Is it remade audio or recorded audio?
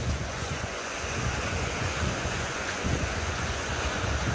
remade